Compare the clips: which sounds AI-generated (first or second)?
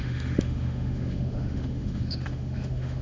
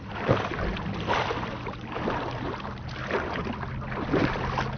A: first